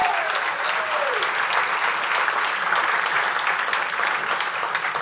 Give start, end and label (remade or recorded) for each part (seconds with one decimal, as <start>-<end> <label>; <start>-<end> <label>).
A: 0.0-5.0 recorded